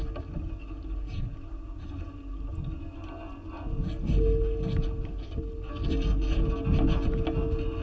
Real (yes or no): yes